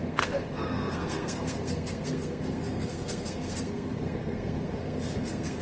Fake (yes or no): yes